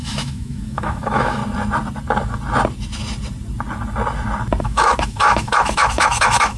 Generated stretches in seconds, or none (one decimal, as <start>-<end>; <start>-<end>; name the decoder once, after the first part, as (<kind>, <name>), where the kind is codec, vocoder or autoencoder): 0.0-1.4 (autoencoder, DAC-VAE); 4.6-6.6